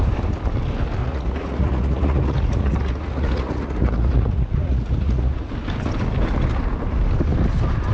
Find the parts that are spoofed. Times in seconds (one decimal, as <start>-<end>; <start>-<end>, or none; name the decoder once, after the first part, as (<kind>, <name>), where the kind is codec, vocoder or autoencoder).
1.0-5.5 (vocoder, Vocos)

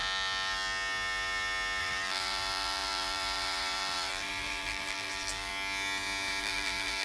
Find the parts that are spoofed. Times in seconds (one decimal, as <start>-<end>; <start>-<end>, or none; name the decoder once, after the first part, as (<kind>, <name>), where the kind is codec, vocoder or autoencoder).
1.8-5.5 (vocoder, BigVGAN v2); 6.4-7.0

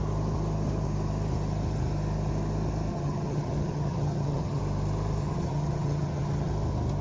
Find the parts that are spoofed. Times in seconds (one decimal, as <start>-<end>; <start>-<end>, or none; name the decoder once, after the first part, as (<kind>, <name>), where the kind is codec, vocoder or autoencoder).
2.9-4.6 (vocoder, HiFi-GAN); 5.2-6.5

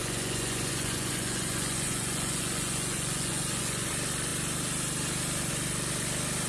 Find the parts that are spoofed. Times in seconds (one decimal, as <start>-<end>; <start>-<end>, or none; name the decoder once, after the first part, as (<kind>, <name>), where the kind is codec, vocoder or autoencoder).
0.0-3.9 (vocoder, Vocos)